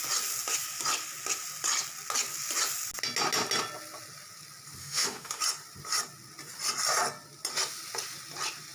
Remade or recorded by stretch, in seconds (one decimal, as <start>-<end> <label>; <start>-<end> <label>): 0.0-4.8 recorded; 4.8-5.4 remade; 5.4-8.7 recorded